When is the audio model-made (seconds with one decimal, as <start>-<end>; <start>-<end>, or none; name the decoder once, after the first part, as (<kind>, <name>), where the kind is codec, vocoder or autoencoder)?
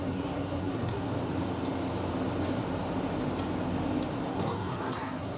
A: 0.0-1.1 (codec, SNAC); 4.3-5.4